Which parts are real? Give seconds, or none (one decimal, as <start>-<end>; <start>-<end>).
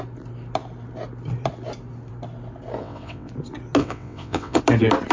0.0-2.8; 3.3-3.8; 4.6-5.1